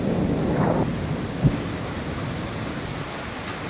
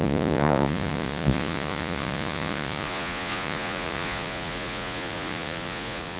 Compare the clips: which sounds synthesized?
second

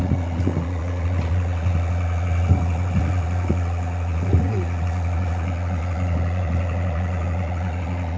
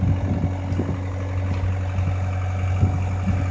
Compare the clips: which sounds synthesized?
first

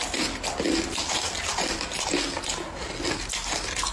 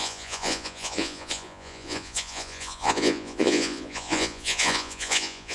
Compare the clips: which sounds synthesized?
second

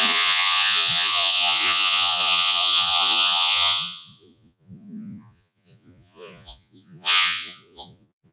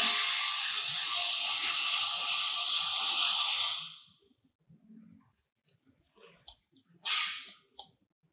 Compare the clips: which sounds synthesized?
first